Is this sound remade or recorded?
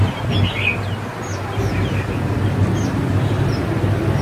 recorded